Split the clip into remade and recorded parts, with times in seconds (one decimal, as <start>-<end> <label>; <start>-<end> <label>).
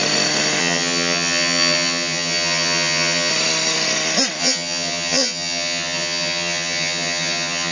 0.0-0.6 recorded; 0.6-3.3 remade; 3.3-4.4 recorded; 4.4-7.7 remade